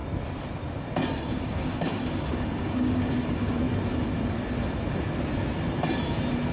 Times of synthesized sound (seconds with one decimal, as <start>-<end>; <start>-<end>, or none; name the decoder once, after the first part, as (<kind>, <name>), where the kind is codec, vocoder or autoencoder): 1.3-3.6 (codec, DAC)